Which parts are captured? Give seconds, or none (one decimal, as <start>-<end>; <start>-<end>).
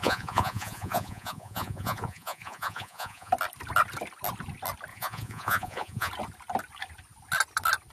3.3-4.9; 6.1-7.9